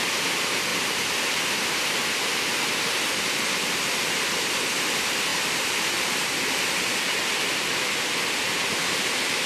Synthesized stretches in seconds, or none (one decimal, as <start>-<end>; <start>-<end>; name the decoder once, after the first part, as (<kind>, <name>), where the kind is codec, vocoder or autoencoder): 5.3-6.5 (vocoder, BigVGAN v2)